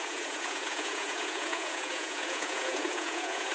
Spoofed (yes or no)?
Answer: yes